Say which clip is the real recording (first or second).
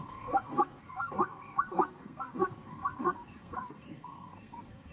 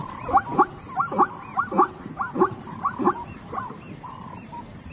second